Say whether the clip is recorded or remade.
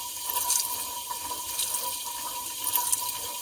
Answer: recorded